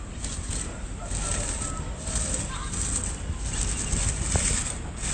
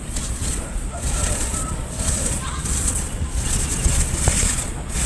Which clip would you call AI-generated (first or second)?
second